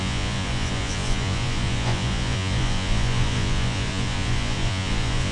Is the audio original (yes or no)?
no